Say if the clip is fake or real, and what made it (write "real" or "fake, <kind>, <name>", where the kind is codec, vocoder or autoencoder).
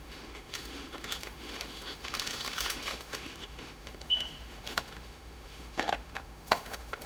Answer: fake, autoencoder, DAC-VAE